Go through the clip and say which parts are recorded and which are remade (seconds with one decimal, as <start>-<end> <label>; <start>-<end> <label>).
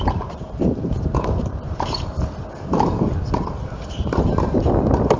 0.0-1.5 recorded; 1.5-4.6 remade; 4.6-5.2 recorded